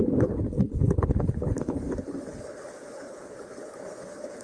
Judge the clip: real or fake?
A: fake